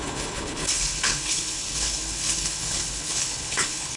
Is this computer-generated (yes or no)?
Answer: yes